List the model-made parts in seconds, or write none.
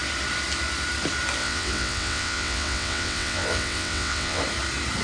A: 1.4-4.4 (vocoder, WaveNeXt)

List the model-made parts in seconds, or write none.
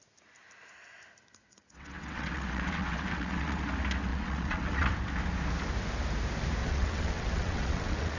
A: 1.4-3.6 (vocoder, WaveNeXt); 4.1-4.9; 6.6-8.2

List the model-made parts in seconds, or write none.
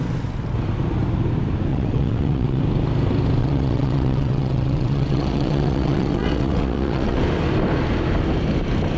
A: 1.7-2.6 (vocoder, WaveNeXt); 3.4-7.2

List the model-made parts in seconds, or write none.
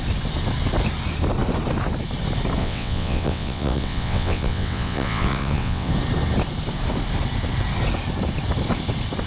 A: 2.6-5.9 (vocoder, WaveNeXt)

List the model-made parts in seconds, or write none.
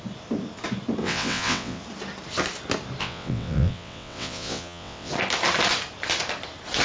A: 1.0-1.8 (vocoder, WaveNeXt); 3.0-5.1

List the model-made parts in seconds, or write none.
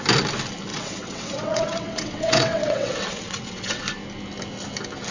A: 0.7-3.8 (vocoder, WaveNeXt)